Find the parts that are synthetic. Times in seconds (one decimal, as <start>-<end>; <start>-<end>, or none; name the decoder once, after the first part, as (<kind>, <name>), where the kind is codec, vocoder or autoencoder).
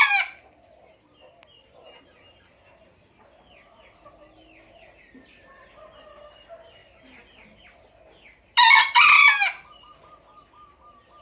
none